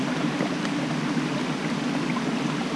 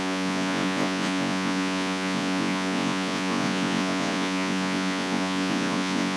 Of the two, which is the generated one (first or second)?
second